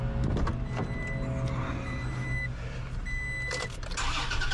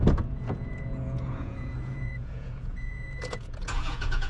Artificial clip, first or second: second